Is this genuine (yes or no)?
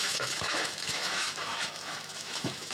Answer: no